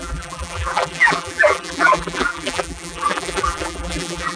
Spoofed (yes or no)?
yes